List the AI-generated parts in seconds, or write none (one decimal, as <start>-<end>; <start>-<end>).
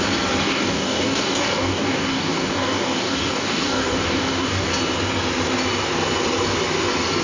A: 0.4-4.7